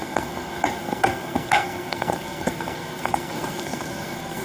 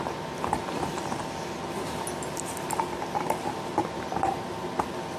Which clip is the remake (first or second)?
first